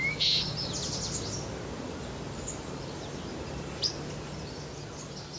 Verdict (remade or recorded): recorded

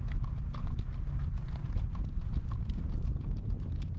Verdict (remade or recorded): recorded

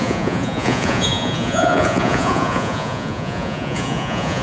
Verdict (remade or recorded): remade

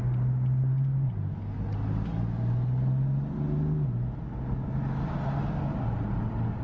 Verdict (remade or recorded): recorded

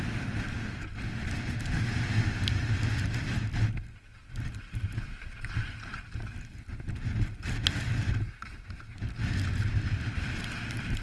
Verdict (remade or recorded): recorded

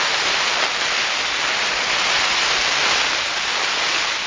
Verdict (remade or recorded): recorded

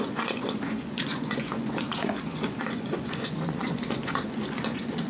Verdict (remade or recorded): remade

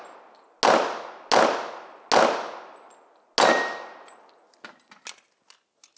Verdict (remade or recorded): recorded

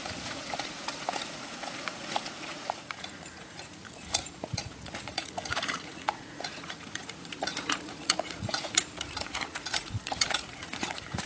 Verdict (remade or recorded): remade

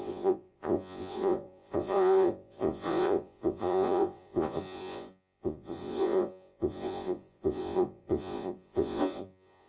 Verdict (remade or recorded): remade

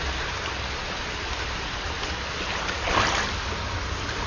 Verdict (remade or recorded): recorded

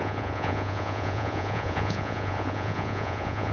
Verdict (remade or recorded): remade